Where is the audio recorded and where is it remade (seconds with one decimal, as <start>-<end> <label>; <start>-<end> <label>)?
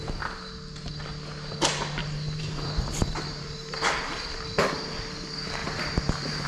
0.0-2.0 recorded; 2.0-4.4 remade; 4.4-5.6 recorded; 5.6-6.5 remade